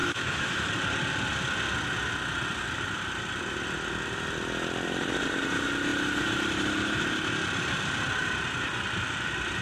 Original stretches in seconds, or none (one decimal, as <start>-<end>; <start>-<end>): 0.7-9.6